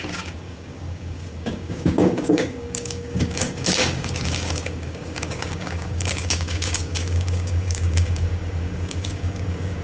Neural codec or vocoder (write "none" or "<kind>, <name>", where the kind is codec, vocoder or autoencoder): codec, DAC